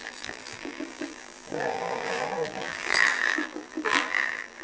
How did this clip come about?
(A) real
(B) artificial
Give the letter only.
B